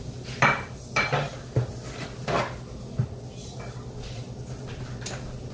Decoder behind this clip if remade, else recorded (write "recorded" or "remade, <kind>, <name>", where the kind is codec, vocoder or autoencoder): recorded